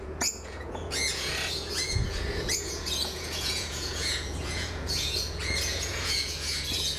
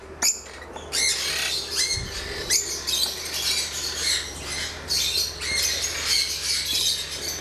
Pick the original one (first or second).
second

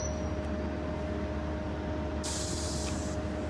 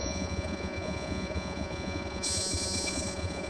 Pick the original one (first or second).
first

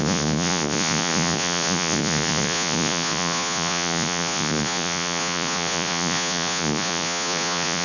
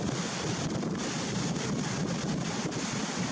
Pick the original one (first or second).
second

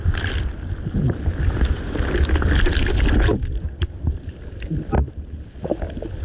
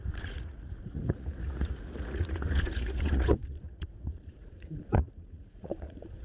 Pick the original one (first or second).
first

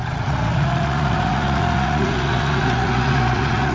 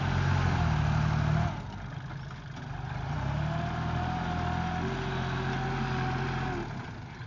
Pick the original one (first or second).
second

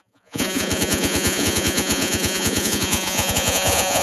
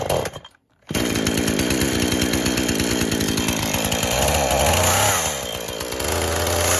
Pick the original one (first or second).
second